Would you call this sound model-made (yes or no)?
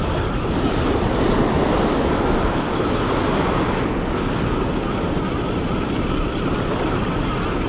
no